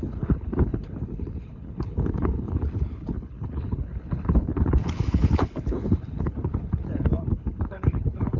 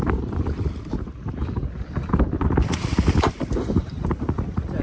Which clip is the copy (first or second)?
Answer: first